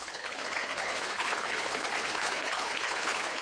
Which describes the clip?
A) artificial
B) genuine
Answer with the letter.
A